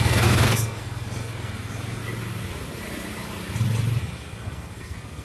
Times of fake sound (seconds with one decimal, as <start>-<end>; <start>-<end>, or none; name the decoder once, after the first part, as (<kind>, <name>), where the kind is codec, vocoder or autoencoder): 0.0-2.0 (codec, SNAC); 4.0-5.2